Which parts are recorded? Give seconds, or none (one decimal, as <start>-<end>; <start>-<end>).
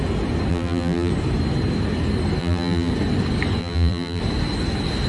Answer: 0.0-0.5; 1.1-2.4; 2.9-3.6; 4.2-5.1